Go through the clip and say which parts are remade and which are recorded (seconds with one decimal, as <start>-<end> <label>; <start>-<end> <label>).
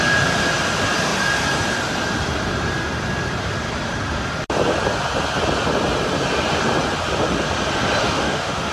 0.0-8.0 recorded; 8.0-8.7 remade